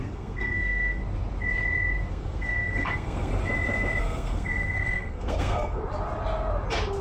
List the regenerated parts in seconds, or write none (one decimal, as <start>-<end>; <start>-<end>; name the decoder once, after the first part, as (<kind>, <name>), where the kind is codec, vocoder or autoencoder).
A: 0.0-1.0 (codec, SNAC); 2.1-3.3; 4.0-5.8